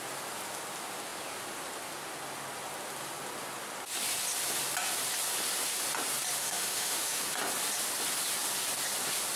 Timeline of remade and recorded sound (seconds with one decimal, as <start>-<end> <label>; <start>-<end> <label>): 0.0-6.4 recorded; 6.4-7.2 remade; 7.2-9.4 recorded